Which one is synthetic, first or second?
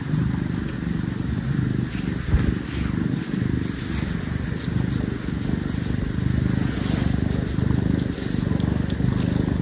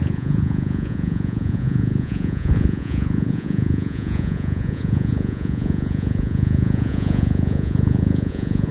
second